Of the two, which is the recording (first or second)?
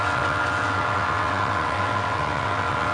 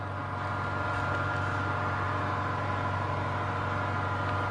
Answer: second